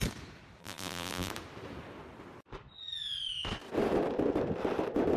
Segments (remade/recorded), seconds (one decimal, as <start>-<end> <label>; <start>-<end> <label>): 0.0-0.6 recorded; 0.6-1.3 remade; 1.3-5.2 recorded